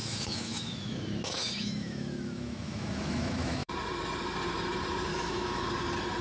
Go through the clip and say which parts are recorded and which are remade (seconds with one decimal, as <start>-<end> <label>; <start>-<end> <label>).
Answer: 0.0-3.7 remade; 3.7-5.1 recorded; 5.1-5.7 remade; 5.7-6.2 recorded